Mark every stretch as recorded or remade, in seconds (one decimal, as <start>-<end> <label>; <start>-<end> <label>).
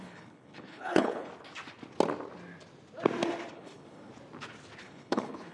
0.0-1.3 remade; 1.3-3.5 recorded; 3.5-4.1 remade; 4.1-4.8 recorded; 4.8-5.5 remade